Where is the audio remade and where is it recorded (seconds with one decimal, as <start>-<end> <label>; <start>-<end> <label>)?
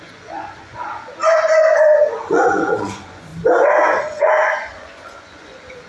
0.0-3.3 remade; 3.3-4.0 recorded; 4.0-5.9 remade